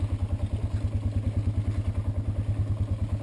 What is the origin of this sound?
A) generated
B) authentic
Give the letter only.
B